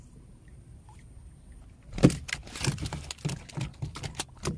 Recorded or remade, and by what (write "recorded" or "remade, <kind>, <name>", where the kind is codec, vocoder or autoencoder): recorded